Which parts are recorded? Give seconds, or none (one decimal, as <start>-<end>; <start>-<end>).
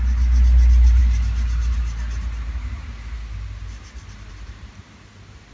0.0-5.5